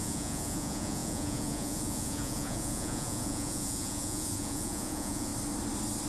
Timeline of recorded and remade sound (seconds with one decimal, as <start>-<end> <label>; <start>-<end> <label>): 0.0-5.3 remade; 5.3-6.1 recorded